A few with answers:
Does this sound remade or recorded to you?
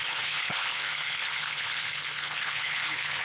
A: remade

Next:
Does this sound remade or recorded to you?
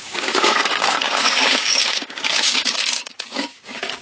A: remade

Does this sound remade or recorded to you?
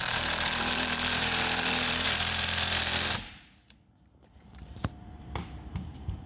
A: remade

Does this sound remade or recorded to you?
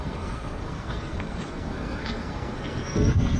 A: remade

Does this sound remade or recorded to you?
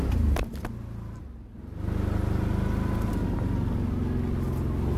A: recorded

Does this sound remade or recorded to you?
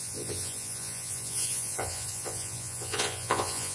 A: remade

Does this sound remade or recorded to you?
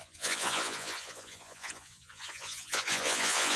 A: remade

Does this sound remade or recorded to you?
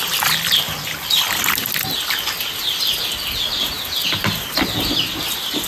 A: recorded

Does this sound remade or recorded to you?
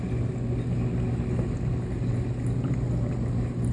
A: recorded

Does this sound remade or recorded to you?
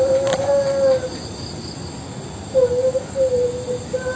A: recorded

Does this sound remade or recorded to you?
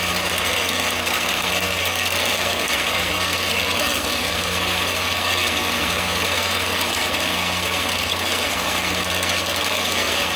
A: remade